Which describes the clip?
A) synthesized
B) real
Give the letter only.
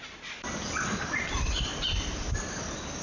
B